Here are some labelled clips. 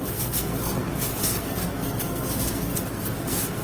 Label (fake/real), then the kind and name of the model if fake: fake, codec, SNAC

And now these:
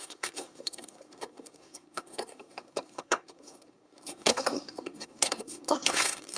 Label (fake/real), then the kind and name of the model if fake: fake, codec, SNAC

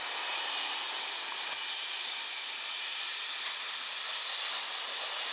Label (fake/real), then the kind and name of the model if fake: real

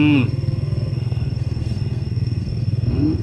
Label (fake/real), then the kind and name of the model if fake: fake, codec, SNAC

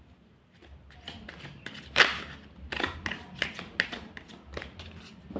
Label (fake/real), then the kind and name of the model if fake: real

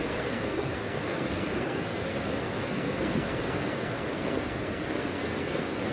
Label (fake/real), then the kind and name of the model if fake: fake, codec, SNAC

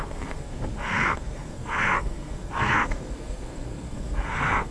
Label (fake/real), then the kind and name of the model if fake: fake, codec, SNAC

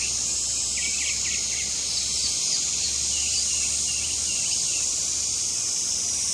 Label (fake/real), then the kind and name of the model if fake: real